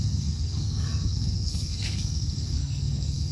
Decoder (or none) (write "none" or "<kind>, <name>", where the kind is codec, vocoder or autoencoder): codec, SNAC